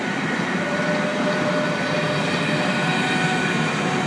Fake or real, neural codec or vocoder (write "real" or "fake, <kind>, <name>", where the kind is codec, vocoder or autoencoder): real